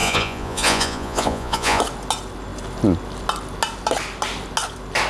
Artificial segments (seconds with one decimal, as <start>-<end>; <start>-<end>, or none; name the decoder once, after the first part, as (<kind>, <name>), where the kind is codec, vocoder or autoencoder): 0.0-1.8 (vocoder, Vocos)